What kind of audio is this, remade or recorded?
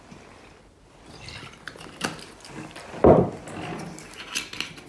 recorded